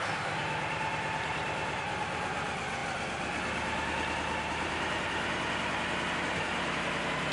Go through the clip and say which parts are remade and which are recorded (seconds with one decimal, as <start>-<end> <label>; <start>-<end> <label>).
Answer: 0.0-7.3 recorded